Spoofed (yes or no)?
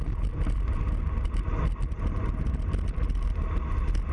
no